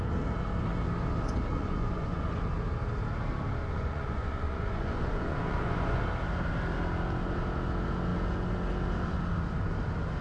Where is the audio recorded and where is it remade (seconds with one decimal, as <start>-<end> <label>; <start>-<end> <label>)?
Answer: 0.0-1.5 recorded; 1.5-2.3 remade; 2.3-3.6 recorded; 3.6-6.0 remade; 6.0-10.2 recorded